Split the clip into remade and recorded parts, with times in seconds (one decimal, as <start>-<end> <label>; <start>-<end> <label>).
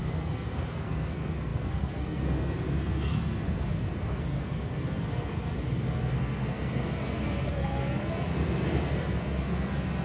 0.0-10.0 remade